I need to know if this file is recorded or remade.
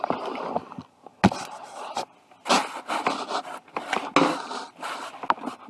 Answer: recorded